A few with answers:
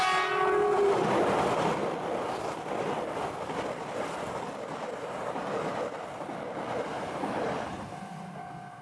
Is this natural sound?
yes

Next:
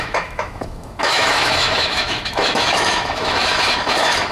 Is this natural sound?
no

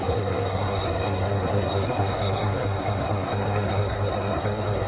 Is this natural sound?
no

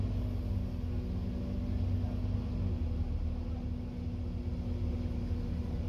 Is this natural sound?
yes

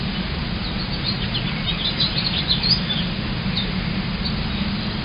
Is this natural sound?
yes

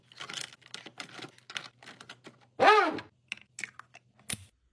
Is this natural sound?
yes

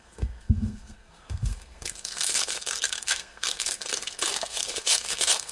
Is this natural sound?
no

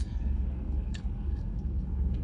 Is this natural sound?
no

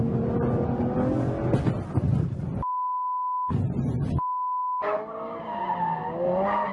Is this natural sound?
yes